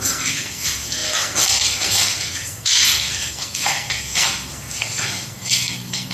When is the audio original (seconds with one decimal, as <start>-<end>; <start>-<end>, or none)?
none